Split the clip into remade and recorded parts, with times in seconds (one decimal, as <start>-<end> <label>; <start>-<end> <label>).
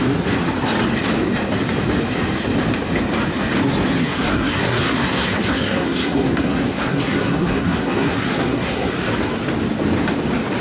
0.0-4.0 recorded; 4.0-8.9 remade; 8.9-10.6 recorded